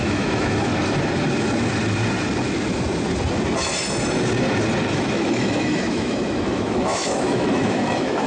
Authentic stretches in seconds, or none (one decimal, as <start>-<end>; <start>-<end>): 0.7-4.9